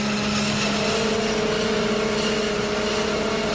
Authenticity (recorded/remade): recorded